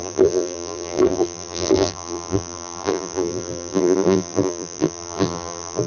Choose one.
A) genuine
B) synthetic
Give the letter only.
B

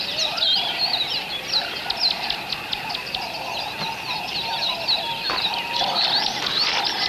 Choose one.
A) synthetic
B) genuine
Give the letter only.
B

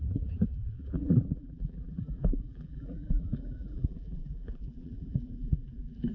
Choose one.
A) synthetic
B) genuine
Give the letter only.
A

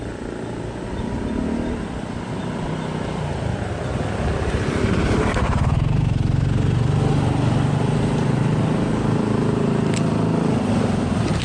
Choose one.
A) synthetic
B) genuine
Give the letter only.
B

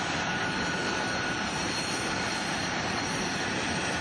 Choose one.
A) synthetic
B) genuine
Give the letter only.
A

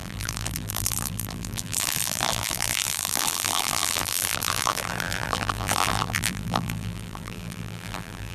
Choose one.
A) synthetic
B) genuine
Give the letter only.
A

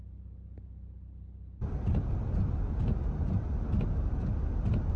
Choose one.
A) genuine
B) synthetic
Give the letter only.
A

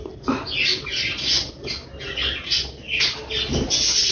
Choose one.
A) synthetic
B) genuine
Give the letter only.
B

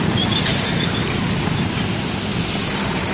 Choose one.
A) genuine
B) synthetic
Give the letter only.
A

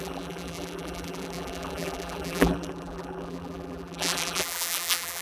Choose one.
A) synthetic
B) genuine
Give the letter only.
A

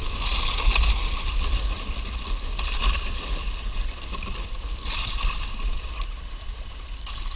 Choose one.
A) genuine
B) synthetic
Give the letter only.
A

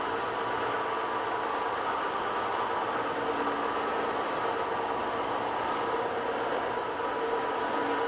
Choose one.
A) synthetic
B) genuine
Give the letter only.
B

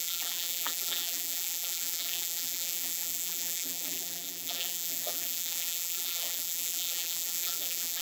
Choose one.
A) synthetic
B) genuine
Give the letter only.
A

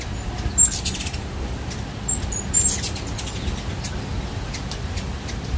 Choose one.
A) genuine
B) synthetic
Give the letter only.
A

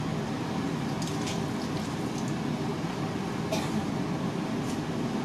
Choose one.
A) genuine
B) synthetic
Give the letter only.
A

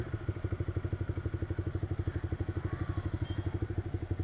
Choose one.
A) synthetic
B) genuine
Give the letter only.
B